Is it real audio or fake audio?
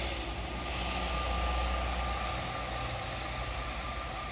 real